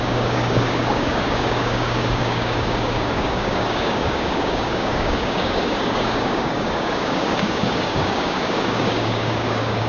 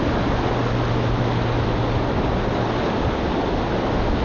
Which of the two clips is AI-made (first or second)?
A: first